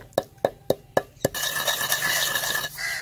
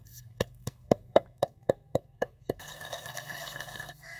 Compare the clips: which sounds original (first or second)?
first